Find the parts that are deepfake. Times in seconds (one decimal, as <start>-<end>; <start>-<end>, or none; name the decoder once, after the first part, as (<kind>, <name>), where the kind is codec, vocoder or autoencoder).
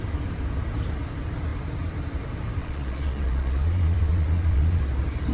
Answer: 2.6-4.8 (vocoder, Vocos)